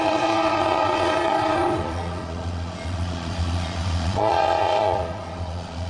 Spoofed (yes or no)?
yes